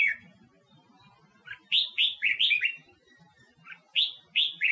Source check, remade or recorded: recorded